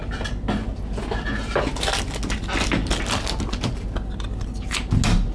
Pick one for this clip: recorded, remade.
recorded